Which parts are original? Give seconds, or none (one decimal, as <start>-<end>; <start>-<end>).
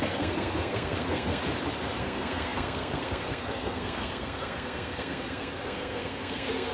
1.4-2.0